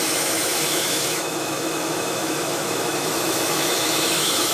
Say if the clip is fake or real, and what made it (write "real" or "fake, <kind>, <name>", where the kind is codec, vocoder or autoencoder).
fake, autoencoder, DAC-VAE